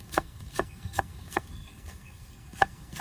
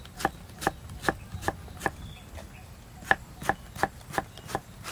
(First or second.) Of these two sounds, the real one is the second